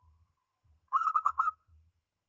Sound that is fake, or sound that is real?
fake